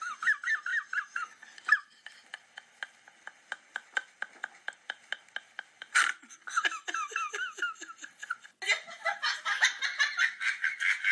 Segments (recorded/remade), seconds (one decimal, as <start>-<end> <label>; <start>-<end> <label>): 0.0-11.1 recorded